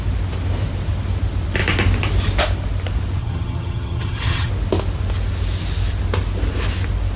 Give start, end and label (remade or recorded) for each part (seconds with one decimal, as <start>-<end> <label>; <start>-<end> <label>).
0.0-3.2 recorded; 3.2-4.5 remade; 4.5-7.2 recorded